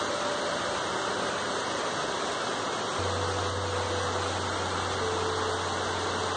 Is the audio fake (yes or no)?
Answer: no